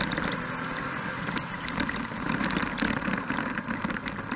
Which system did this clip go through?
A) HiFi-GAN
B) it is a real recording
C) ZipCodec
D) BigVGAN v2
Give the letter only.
B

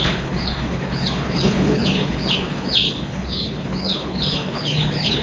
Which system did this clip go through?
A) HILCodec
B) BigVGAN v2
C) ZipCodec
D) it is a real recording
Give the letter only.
A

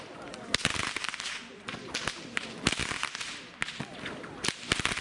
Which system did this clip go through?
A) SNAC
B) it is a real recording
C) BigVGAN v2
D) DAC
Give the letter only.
B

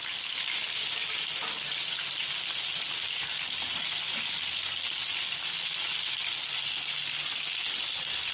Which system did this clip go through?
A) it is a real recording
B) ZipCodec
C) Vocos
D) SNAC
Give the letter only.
A